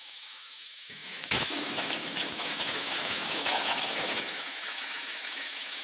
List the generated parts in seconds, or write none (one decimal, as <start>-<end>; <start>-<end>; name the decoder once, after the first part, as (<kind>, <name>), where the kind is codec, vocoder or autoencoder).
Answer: 0.0-5.8 (autoencoder, DAC-VAE)